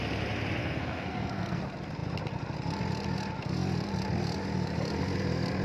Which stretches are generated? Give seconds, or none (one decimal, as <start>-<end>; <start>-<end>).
0.6-1.6